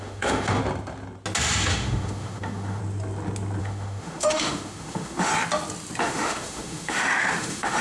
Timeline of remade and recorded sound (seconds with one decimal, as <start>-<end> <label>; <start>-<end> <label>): 0.0-0.6 remade; 0.6-1.7 recorded; 1.7-2.8 remade; 2.8-3.6 recorded; 3.6-5.3 remade; 5.3-6.0 recorded; 6.0-7.8 remade